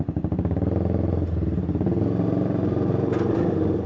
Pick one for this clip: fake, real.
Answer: fake